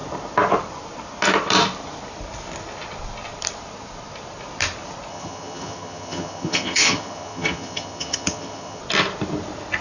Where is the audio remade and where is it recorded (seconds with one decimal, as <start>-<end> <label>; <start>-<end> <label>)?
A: 0.0-5.1 recorded; 5.1-8.8 remade; 8.8-9.8 recorded